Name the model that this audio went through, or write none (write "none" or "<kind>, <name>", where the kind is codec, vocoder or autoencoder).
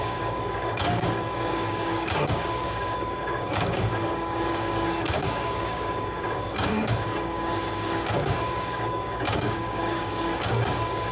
codec, DAC